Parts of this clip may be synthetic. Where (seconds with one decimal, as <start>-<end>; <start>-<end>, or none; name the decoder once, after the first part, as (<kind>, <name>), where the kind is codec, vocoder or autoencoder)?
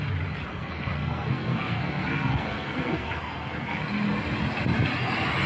0.5-3.8 (codec, SNAC)